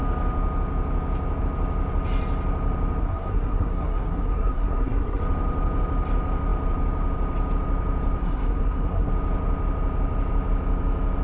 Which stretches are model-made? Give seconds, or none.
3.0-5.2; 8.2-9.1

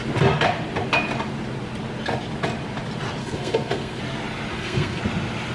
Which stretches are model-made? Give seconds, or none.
3.2-4.0; 4.5-5.0

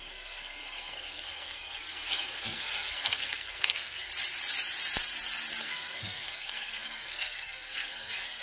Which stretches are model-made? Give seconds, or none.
0.0-4.1; 5.6-8.4